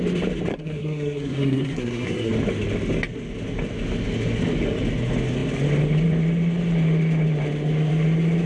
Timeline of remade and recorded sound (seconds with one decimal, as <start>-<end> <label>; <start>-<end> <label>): 0.0-0.5 recorded; 0.5-2.3 remade; 2.3-8.5 recorded